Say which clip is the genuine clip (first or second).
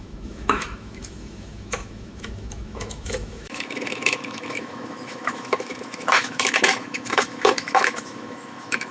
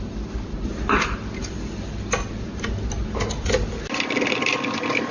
second